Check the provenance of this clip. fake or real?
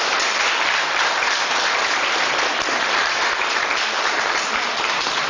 fake